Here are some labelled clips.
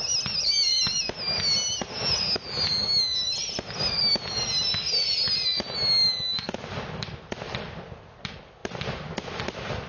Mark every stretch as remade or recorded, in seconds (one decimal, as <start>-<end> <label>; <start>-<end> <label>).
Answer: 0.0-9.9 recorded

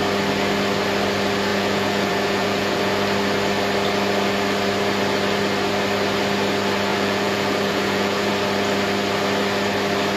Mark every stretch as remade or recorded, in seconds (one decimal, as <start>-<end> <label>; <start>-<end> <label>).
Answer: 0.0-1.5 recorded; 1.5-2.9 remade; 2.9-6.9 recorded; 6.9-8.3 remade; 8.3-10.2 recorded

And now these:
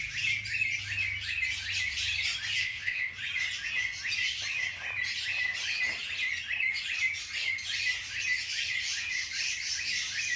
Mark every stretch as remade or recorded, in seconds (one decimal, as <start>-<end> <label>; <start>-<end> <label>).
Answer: 0.0-2.6 recorded; 2.6-3.1 remade; 3.1-10.4 recorded